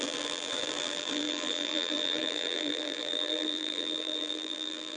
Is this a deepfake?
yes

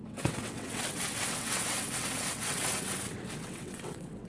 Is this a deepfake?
yes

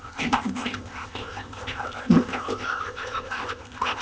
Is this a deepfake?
yes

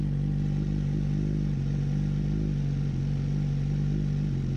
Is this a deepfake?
no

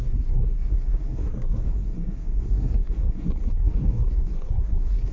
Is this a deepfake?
yes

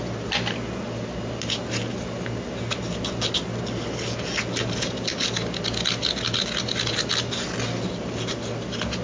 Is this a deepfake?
no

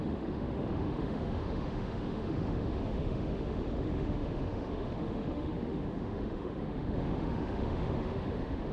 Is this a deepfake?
yes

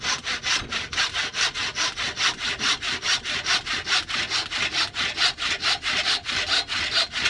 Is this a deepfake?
no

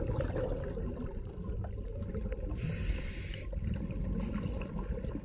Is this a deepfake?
no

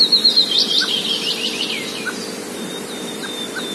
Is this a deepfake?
no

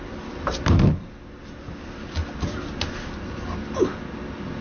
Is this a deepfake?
no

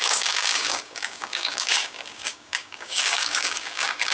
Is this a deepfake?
yes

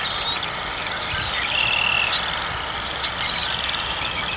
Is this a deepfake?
no